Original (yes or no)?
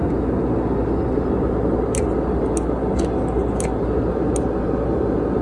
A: yes